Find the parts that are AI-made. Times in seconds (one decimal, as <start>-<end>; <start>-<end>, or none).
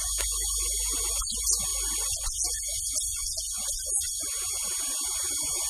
none